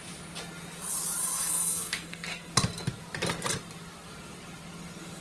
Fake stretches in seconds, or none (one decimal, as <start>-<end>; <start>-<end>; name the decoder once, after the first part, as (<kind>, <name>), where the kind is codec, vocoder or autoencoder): 1.2-2.5 (codec, SNAC)